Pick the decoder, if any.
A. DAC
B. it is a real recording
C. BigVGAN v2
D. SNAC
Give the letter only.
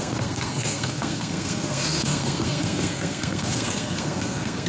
D